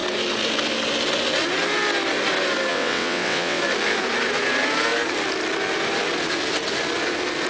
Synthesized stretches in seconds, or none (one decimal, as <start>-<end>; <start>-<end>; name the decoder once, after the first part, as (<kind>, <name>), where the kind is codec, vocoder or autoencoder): 2.7-3.6 (vocoder, WaveNeXt)